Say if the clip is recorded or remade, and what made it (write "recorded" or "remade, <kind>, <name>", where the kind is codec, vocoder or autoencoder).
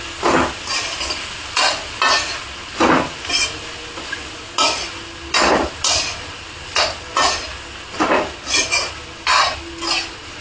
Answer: recorded